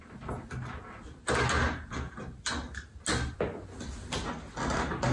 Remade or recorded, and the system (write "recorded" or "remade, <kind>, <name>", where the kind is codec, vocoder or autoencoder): recorded